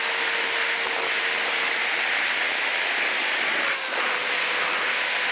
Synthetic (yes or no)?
no